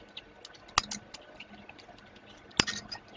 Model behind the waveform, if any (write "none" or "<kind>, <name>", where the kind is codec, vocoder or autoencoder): none